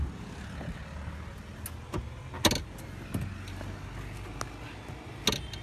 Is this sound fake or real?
real